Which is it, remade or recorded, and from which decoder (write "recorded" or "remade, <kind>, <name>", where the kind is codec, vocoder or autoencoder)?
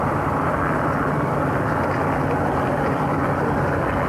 remade, vocoder, BigVGAN v2